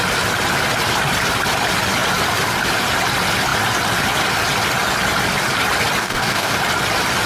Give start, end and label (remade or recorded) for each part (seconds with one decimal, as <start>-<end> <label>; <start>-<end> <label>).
0.0-6.0 recorded; 6.0-6.5 remade; 6.5-7.3 recorded